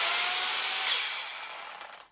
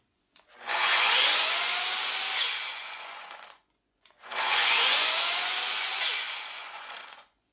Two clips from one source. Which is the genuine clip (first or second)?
first